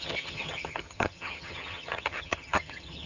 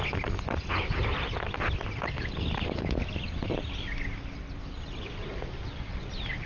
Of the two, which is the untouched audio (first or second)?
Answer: second